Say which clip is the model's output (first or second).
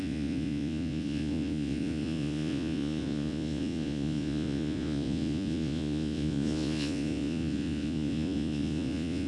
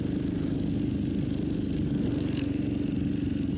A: first